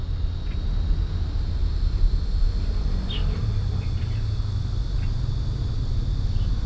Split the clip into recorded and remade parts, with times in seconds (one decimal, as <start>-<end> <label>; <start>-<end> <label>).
0.0-6.7 recorded